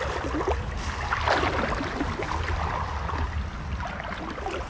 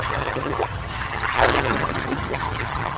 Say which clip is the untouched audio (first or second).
first